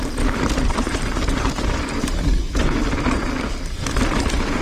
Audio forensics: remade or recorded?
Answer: remade